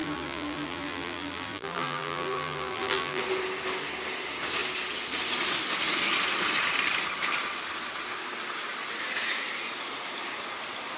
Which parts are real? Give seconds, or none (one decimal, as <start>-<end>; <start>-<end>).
3.2-11.0